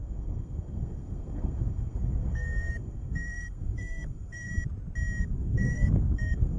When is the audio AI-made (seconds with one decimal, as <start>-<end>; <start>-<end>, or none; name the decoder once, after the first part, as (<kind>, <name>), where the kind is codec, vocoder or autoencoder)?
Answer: 0.0-4.5 (codec, SNAC); 5.2-6.6